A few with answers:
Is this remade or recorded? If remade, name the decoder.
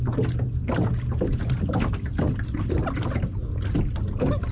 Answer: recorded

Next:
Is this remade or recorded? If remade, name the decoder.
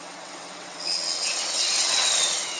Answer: remade, vocoder, WaveNeXt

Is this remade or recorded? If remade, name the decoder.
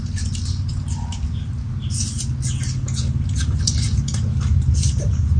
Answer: recorded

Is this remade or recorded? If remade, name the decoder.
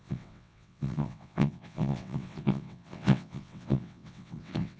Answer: remade, vocoder, WaveNeXt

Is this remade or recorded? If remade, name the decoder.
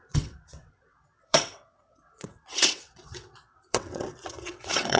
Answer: remade, vocoder, WaveNeXt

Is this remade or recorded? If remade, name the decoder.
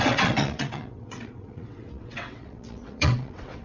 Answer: remade, vocoder, WaveNeXt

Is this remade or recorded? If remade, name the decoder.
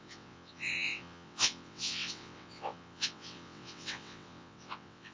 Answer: remade, vocoder, WaveNeXt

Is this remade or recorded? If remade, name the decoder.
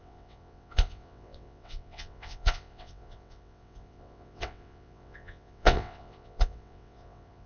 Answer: remade, vocoder, WaveNeXt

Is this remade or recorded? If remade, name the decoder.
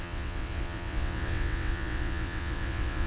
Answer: remade, vocoder, WaveNeXt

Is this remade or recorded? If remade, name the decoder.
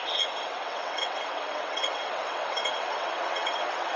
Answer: remade, vocoder, WaveNeXt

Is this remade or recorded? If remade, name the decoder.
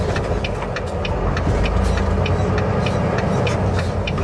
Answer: recorded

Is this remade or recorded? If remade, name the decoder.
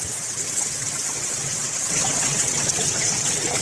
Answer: remade, vocoder, WaveNeXt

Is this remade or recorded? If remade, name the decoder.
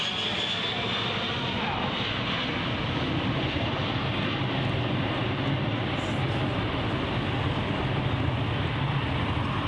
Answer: recorded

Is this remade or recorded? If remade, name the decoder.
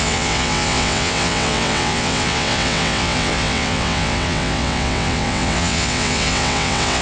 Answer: remade, vocoder, WaveNeXt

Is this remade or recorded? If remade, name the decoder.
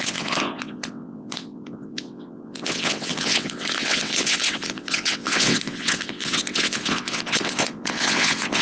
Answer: remade, vocoder, WaveNeXt